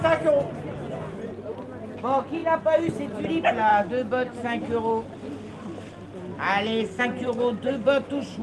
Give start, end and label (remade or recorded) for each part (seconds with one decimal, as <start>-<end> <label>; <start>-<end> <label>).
0.0-8.4 recorded